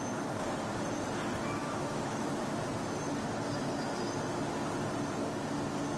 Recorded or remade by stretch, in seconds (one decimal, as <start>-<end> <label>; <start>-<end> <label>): 0.0-1.6 recorded; 1.6-2.3 remade; 2.3-6.0 recorded

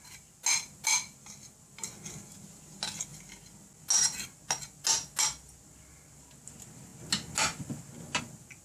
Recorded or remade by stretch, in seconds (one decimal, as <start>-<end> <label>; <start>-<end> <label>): 0.0-8.6 recorded

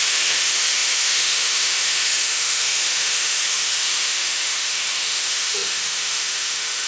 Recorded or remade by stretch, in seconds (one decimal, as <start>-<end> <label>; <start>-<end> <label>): 0.0-6.9 remade